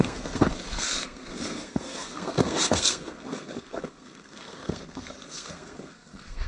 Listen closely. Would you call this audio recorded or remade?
remade